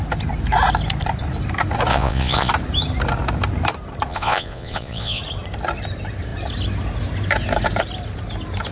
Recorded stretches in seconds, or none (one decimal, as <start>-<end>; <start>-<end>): 0.0-1.9; 2.5-4.1; 5.2-8.7